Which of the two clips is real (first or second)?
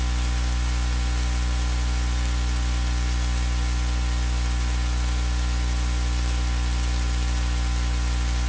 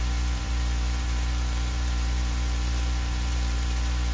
first